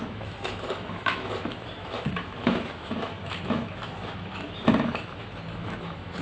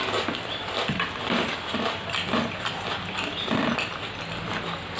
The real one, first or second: second